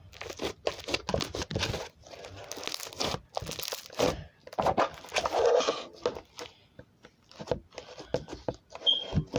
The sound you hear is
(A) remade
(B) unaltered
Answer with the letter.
B